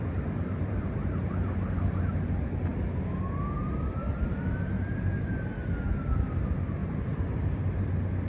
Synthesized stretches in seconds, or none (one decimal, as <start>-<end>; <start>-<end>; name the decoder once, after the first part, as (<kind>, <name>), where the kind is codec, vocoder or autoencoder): 6.8-7.6 (vocoder, BigVGAN v2)